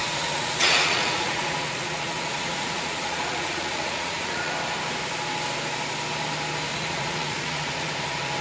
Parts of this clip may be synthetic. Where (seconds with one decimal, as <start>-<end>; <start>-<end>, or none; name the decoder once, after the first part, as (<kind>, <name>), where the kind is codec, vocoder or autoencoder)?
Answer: 0.0-4.5 (vocoder, Vocos); 6.7-7.9